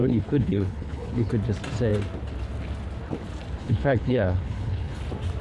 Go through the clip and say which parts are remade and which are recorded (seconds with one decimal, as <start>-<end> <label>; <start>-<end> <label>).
0.0-1.3 remade; 1.3-3.6 recorded; 3.6-5.0 remade; 5.0-5.4 recorded